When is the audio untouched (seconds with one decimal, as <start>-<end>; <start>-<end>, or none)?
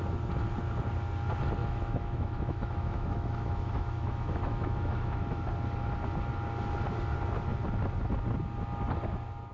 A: 0.0-1.6; 5.5-9.5